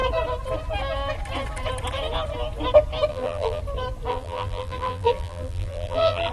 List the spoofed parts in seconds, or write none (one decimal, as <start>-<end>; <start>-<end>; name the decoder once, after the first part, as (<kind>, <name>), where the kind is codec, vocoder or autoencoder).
3.1-3.6 (vocoder, BigVGAN v2); 4.1-6.3